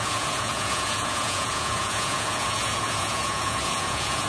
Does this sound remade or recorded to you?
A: remade